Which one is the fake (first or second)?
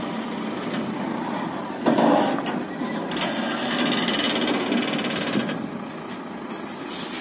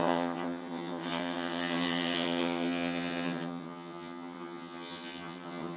second